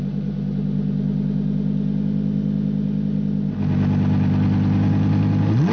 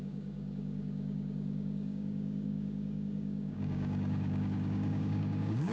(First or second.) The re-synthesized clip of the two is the second